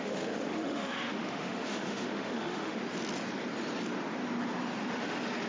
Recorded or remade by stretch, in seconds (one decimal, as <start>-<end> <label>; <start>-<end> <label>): 0.0-2.8 remade; 2.8-5.5 recorded